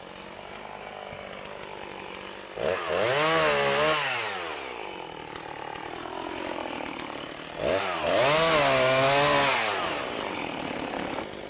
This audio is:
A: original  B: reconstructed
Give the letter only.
A